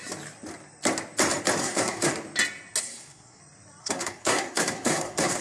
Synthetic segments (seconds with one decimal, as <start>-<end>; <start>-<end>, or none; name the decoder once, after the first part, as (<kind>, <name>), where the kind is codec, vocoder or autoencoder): 1.6-2.1 (codec, SNAC); 2.8-3.4; 3.8-5.4